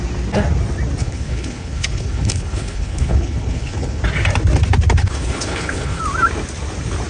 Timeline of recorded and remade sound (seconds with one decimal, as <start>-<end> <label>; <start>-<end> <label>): 0.0-1.0 recorded; 1.0-4.0 remade; 4.0-5.0 recorded; 5.0-6.0 remade; 6.0-7.1 recorded